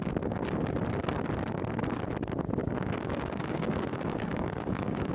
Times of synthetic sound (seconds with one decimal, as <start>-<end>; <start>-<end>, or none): 2.6-5.1